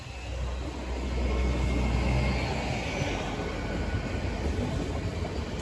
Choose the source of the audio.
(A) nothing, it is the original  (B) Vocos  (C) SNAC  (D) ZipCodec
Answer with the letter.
A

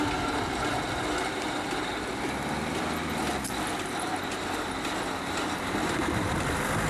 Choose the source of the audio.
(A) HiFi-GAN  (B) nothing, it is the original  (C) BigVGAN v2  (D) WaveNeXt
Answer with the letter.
B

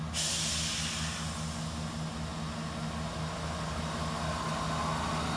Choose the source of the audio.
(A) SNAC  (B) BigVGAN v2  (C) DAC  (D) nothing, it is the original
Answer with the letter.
D